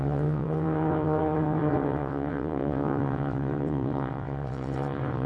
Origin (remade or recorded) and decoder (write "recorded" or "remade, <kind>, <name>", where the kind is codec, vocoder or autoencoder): remade, vocoder, WaveNeXt